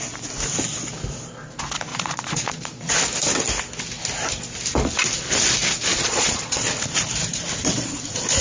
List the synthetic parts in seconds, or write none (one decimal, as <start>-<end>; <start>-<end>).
1.9-2.9; 5.9-6.6